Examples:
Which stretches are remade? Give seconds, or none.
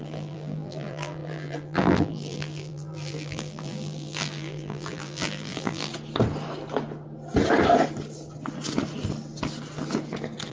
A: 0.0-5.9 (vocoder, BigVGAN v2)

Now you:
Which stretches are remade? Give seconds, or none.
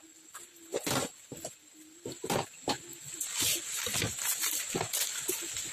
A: none